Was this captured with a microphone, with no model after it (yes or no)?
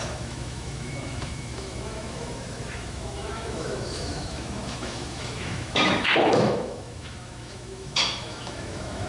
no